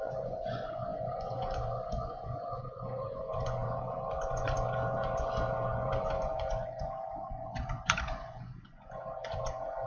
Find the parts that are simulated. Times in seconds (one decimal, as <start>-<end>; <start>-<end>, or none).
0.0-9.9